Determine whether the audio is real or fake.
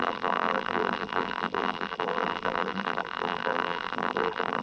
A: fake